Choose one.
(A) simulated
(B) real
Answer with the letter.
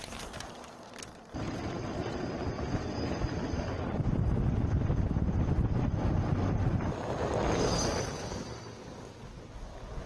B